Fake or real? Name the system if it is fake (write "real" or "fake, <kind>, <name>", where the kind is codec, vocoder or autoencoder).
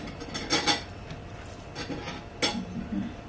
real